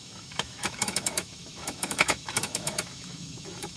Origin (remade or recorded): remade